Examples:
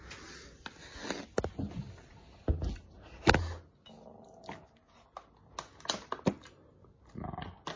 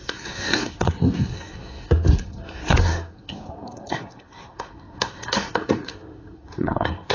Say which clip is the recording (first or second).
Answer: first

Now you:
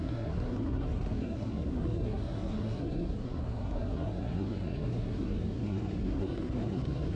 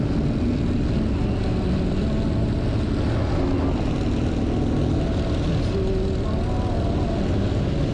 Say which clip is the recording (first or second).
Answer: second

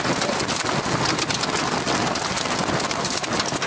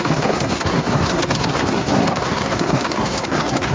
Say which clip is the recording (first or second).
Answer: first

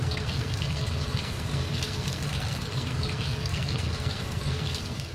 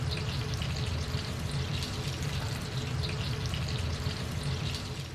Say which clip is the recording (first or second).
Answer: second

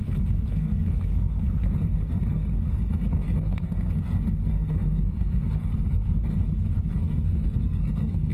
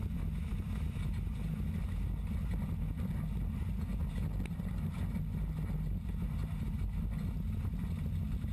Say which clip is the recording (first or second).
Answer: second